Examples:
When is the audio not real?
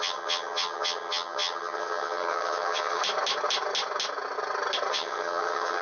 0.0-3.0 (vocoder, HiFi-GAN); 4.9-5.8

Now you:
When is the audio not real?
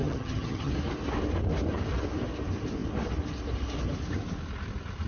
0.0-0.7 (vocoder, HiFi-GAN)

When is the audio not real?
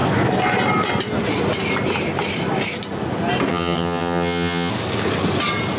3.5-4.7 (vocoder, HiFi-GAN)